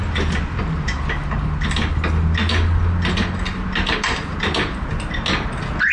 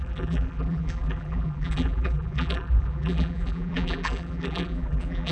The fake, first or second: second